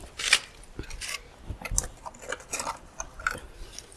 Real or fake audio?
real